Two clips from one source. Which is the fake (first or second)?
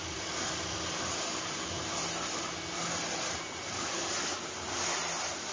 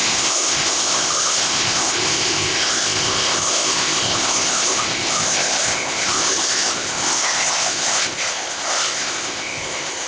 second